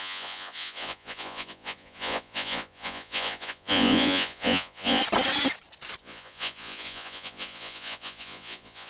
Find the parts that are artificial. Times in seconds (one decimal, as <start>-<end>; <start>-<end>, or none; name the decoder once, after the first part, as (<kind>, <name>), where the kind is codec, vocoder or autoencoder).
0.0-5.0 (vocoder, Vocos); 6.0-8.9